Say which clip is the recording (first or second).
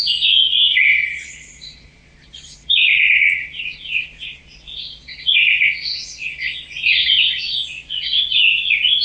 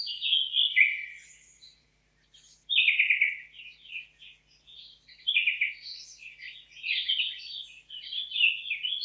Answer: second